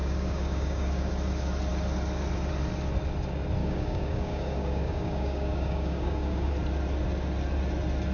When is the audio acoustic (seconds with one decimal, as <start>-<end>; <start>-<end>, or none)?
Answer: 1.1-3.6; 6.5-8.1